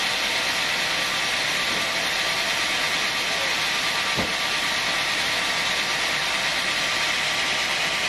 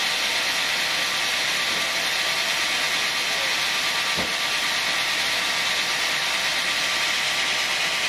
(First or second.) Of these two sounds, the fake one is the first